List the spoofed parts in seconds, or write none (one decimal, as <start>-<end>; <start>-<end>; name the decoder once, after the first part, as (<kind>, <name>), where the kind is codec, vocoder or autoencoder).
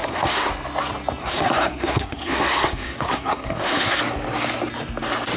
0.0-0.5 (codec, SNAC); 1.2-4.0